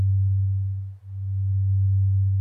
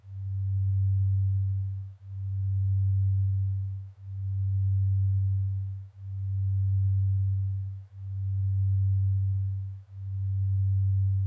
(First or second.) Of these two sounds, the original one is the first